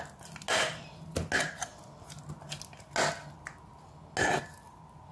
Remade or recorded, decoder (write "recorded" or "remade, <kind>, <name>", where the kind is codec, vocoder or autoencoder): recorded